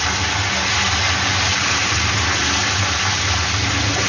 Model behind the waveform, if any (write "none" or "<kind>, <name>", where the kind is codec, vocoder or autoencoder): none